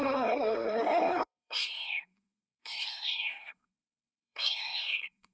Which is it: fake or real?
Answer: fake